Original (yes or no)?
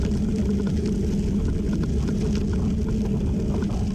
yes